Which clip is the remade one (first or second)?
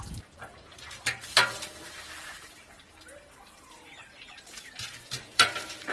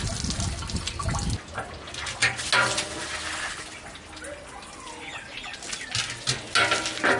first